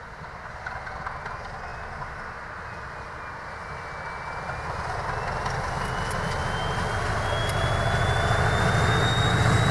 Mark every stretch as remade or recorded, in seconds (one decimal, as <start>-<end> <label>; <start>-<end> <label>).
0.0-9.7 recorded